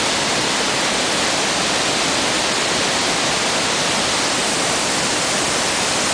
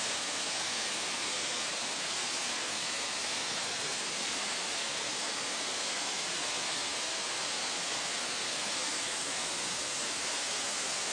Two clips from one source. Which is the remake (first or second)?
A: second